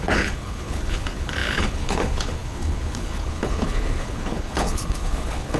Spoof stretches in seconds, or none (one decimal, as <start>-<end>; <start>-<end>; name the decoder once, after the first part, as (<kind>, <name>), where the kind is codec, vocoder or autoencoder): 0.0-5.6 (codec, HILCodec)